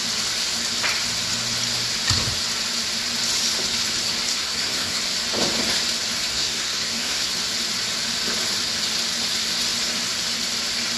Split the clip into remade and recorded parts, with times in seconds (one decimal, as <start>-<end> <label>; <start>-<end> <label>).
0.0-4.3 recorded; 4.3-5.0 remade; 5.0-6.3 recorded; 6.3-7.3 remade; 7.3-11.0 recorded